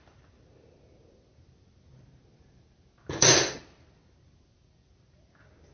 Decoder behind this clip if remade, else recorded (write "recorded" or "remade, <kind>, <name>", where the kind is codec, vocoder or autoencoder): recorded